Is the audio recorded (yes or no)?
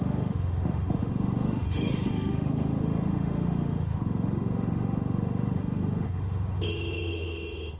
no